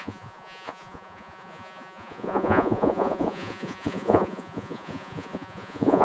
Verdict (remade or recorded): remade